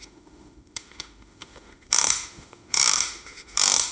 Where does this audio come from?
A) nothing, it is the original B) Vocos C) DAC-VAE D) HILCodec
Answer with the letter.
C